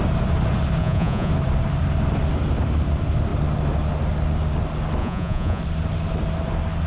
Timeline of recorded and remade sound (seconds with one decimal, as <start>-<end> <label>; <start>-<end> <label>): 0.0-0.8 recorded; 0.8-1.3 remade; 1.3-5.0 recorded; 5.0-5.6 remade; 5.6-6.9 recorded